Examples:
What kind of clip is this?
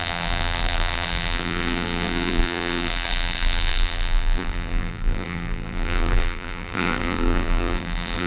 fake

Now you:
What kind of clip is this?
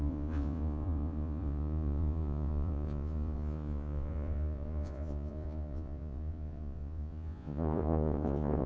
fake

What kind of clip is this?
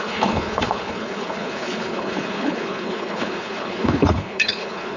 fake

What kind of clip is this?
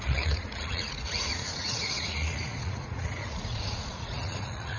fake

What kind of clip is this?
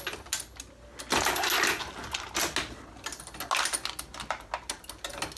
real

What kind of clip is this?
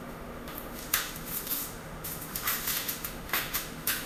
fake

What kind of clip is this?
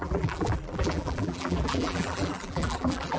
fake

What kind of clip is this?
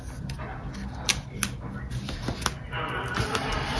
real